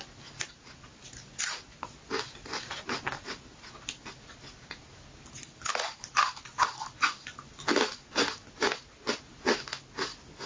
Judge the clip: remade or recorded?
recorded